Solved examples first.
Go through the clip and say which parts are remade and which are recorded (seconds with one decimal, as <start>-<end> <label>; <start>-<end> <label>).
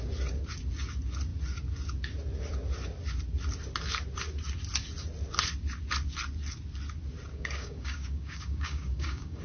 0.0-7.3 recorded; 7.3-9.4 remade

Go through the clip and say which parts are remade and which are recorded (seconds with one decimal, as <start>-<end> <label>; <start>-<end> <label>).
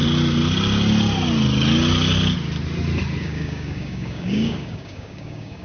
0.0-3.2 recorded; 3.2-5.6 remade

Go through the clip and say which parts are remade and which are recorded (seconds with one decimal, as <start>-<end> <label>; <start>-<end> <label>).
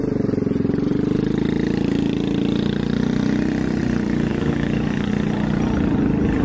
0.0-4.3 recorded; 4.3-5.1 remade; 5.1-6.4 recorded